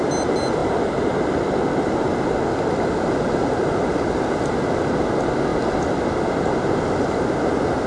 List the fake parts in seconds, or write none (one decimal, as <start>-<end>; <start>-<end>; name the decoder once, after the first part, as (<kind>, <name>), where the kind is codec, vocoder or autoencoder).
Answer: none